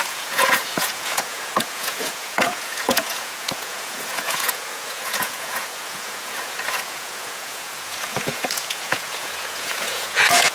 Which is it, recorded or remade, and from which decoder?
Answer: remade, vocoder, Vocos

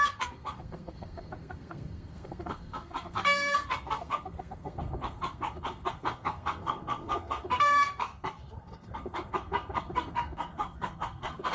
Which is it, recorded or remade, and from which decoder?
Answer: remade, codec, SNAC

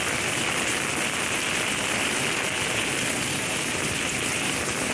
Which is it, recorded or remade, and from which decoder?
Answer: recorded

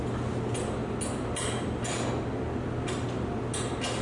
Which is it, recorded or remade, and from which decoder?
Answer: recorded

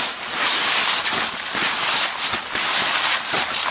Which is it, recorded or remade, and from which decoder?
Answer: recorded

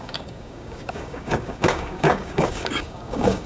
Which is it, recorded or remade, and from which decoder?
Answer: remade, codec, DAC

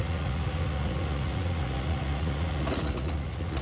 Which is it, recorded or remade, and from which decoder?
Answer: remade, vocoder, Vocos